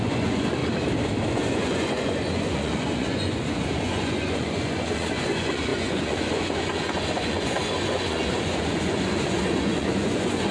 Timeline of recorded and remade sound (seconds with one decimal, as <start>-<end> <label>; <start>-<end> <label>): 0.0-0.6 remade; 0.6-1.3 recorded; 1.3-10.5 remade